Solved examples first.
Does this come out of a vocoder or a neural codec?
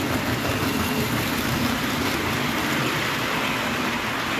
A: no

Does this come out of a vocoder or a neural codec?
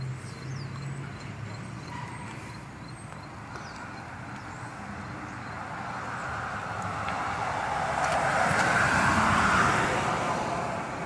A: no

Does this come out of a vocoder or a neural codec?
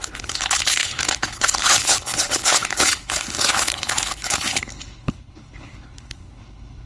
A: yes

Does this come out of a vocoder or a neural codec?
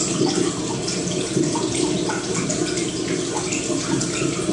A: no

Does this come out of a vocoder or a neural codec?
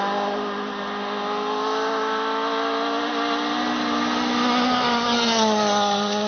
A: no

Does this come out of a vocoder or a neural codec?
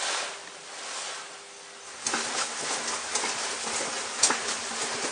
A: no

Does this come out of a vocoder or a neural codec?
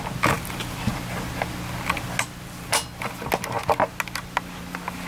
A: no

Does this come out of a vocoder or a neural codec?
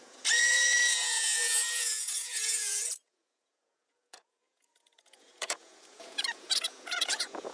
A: yes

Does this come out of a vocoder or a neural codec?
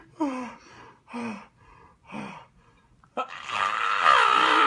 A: yes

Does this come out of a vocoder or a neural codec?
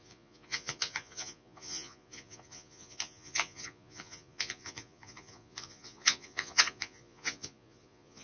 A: yes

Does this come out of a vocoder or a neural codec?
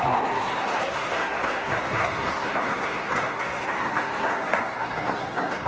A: yes